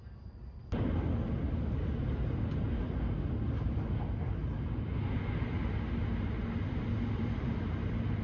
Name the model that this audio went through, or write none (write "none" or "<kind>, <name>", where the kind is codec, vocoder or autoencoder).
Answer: none